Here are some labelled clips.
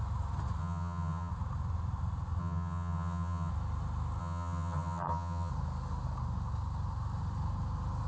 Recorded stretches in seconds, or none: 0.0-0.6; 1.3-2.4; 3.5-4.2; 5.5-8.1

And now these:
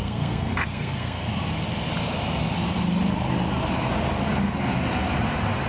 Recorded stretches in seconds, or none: 1.3-5.7

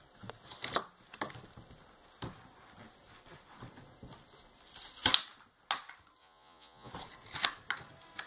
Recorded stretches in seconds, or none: 0.0-6.2; 6.9-8.3

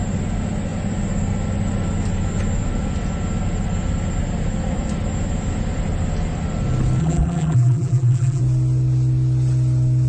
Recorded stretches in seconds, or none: 0.0-7.0; 8.4-10.1

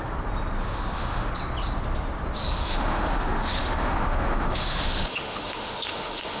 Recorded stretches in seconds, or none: 0.0-0.6; 1.3-2.4

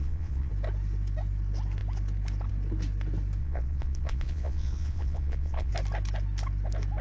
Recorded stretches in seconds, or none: 0.5-3.4; 5.7-7.0

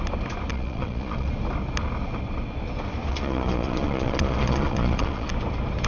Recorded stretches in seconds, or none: 0.0-0.5; 1.3-3.1; 5.3-5.9

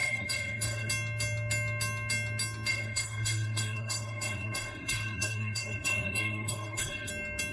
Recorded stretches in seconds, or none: 0.9-2.7; 7.1-7.5